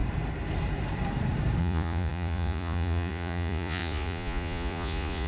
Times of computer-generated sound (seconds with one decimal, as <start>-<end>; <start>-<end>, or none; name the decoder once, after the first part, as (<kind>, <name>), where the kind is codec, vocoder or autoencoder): 1.6-5.3 (vocoder, Vocos)

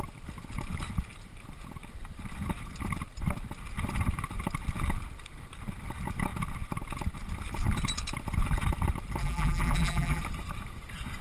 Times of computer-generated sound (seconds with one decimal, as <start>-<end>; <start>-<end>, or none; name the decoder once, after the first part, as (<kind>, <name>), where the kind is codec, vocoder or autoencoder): 9.2-10.2 (vocoder, BigVGAN v2)

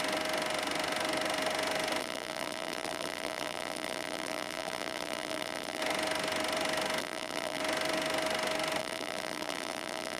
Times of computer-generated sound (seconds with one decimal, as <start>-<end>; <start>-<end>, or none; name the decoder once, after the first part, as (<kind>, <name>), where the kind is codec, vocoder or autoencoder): 2.0-5.8 (vocoder, BigVGAN v2); 7.0-7.6; 8.8-10.2

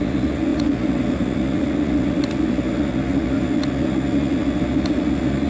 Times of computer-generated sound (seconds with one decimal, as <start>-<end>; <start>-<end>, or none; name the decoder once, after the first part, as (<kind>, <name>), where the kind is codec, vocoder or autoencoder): 0.0-5.5 (vocoder, Vocos)

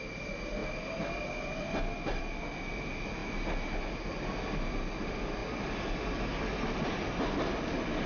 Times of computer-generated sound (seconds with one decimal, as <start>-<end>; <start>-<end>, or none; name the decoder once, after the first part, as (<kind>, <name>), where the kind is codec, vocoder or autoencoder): 5.4-6.2 (vocoder, BigVGAN v2)

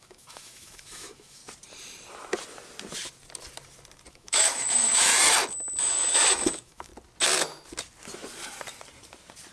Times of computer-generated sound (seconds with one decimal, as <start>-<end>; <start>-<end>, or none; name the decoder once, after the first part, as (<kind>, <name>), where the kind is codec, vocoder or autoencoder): 0.0-1.4 (autoencoder, DAC-VAE); 4.1-5.1; 5.8-6.9

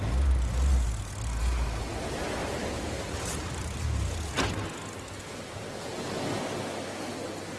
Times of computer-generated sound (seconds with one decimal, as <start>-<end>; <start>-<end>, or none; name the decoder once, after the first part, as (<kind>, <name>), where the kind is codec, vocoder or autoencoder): 2.4-3.6 (vocoder, BigVGAN v2)

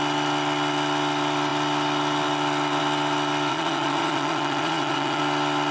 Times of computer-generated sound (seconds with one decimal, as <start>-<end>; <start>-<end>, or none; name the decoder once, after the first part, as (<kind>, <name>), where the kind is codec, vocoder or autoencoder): 3.5-5.2 (vocoder, Vocos)